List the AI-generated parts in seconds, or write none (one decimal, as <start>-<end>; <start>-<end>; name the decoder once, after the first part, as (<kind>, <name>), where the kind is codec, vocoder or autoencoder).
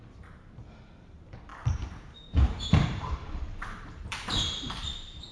0.0-5.3 (vocoder, BigVGAN v2)